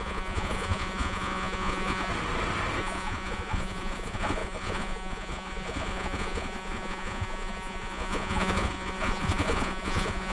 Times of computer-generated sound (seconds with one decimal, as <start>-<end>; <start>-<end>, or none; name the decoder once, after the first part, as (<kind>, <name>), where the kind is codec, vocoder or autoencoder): 0.0-2.1 (vocoder, Vocos); 2.8-10.3